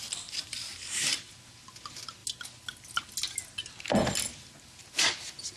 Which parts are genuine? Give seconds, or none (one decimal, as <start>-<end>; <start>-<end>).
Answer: 0.0-5.6